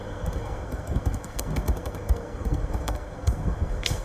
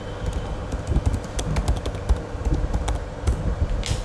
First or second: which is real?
second